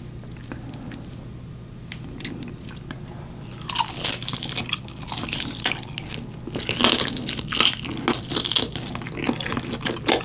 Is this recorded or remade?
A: recorded